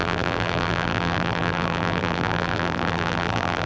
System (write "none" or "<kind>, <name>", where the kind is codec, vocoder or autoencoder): vocoder, BigVGAN v2